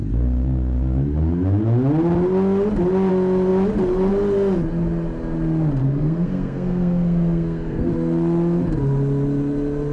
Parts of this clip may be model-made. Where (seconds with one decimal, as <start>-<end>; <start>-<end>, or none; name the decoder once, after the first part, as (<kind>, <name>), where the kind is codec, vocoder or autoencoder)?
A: 5.8-7.9 (codec, SNAC)